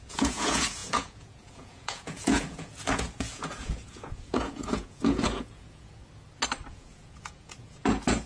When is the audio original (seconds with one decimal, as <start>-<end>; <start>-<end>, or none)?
6.0-6.7